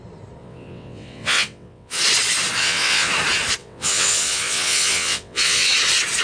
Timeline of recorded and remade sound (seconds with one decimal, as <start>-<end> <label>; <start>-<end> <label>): 0.0-0.4 recorded; 0.4-2.0 remade; 2.0-2.6 recorded; 2.6-3.1 remade; 3.1-3.6 recorded; 3.6-5.7 remade; 5.7-6.2 recorded